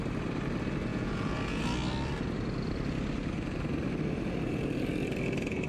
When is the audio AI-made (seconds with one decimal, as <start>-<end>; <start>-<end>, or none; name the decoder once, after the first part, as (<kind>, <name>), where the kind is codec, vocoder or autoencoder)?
0.9-1.6 (vocoder, Vocos)